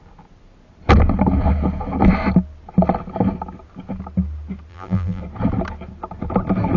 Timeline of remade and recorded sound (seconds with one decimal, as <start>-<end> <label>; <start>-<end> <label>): 0.0-4.7 recorded; 4.7-5.2 remade; 5.2-6.8 recorded